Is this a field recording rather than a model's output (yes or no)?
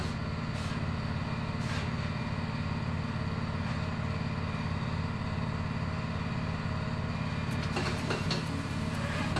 yes